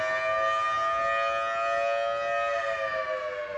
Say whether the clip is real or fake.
real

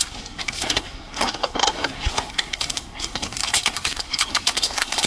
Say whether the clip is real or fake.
fake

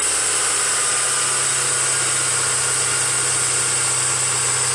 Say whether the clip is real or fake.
real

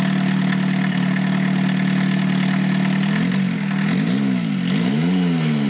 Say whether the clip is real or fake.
real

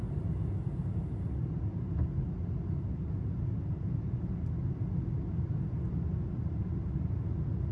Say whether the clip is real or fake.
real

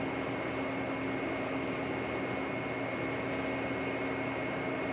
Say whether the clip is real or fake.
real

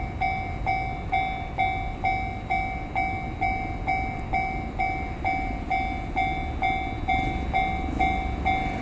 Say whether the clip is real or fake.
real